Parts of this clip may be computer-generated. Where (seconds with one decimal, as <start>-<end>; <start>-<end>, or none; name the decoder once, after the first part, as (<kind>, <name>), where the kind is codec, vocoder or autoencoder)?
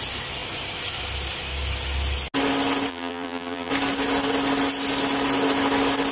2.9-3.7 (vocoder, BigVGAN v2)